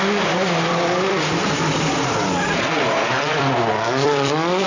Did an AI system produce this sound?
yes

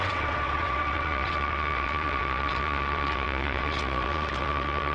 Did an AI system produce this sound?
yes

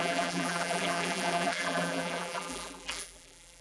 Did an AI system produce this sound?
yes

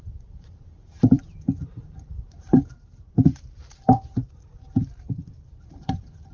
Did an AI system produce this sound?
yes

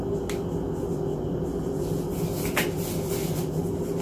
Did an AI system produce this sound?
no